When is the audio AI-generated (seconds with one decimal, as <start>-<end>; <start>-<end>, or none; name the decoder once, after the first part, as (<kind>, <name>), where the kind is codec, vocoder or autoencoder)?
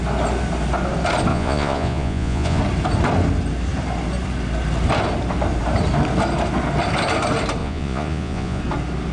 1.3-2.6 (vocoder, Vocos); 7.6-8.6